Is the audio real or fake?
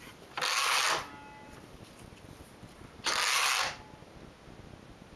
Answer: real